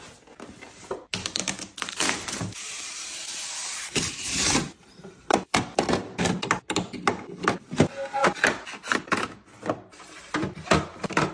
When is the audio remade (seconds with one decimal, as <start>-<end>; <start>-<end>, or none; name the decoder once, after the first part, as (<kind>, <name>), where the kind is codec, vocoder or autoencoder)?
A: 1.2-5.5 (vocoder, BigVGAN v2); 9.9-10.7